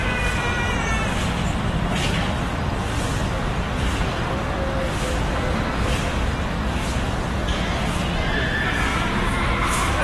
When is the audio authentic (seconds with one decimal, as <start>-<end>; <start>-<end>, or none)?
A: 0.0-8.9